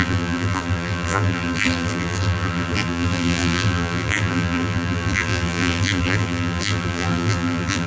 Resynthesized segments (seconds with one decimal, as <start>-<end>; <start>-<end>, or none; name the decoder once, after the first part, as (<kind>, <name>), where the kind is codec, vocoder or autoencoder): 0.0-7.9 (vocoder, BigVGAN v2)